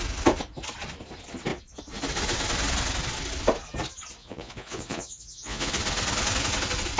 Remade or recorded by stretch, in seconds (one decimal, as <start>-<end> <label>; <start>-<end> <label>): 0.0-4.2 recorded; 4.2-5.7 remade; 5.7-7.0 recorded